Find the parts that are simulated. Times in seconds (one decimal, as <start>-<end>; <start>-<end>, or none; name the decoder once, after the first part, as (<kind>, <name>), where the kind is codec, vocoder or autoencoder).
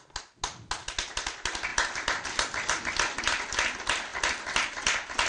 none